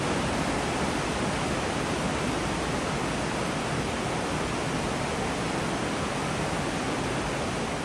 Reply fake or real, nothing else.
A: real